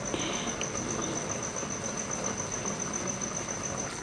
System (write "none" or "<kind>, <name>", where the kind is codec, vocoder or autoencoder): none